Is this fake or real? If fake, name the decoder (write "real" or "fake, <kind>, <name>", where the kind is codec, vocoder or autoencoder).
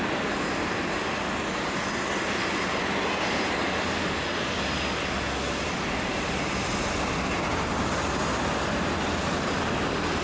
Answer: real